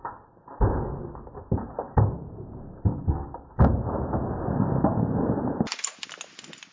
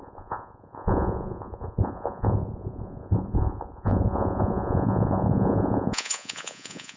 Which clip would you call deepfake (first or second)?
second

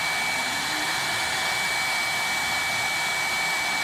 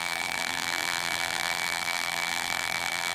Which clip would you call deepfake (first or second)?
second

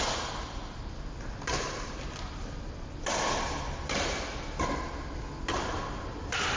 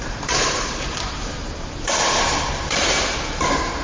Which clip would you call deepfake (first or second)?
second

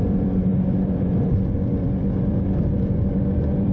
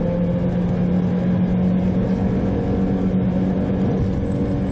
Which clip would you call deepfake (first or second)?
first